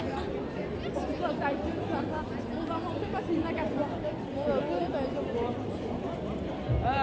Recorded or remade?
recorded